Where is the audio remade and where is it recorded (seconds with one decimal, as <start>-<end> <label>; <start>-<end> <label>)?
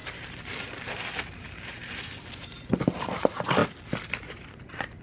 0.0-3.6 remade; 3.6-4.1 recorded; 4.1-5.0 remade